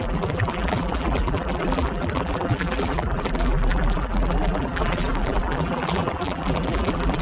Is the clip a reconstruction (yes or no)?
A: yes